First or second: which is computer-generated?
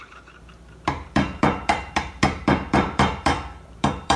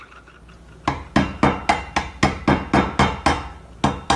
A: first